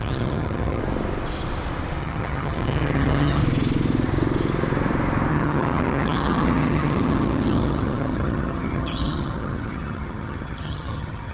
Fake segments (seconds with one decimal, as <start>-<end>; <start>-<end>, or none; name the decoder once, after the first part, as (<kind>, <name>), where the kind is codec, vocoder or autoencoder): 0.0-0.8 (vocoder, HiFi-GAN); 2.0-3.4; 5.3-11.3